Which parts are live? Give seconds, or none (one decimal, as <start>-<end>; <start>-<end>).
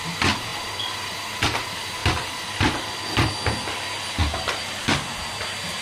0.0-2.0; 3.3-4.2; 4.8-5.8